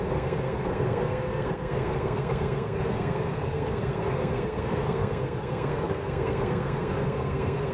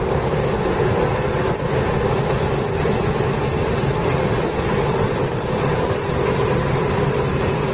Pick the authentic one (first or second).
second